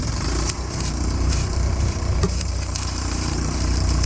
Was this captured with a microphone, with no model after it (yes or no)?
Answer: no